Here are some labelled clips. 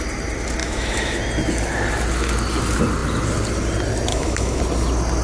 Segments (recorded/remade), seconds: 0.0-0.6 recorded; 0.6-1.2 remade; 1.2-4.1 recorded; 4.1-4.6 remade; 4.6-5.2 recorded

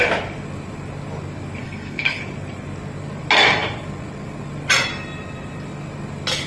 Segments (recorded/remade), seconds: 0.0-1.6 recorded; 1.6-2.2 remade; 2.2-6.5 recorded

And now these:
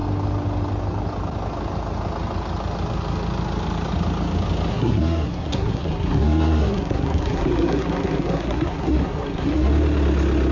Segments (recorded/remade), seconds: 0.0-4.7 recorded; 4.7-9.7 remade; 9.7-10.5 recorded

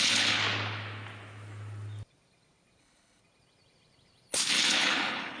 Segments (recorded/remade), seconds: 0.0-0.4 remade; 0.4-2.8 recorded; 2.8-3.2 remade; 3.2-4.5 recorded; 4.5-5.4 remade

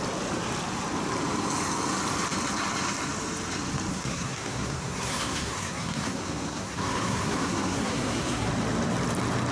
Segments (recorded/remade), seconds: 0.0-3.9 recorded; 3.9-8.5 remade; 8.5-9.5 recorded